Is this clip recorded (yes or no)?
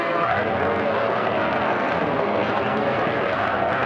no